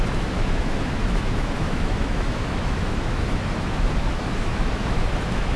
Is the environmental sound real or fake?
fake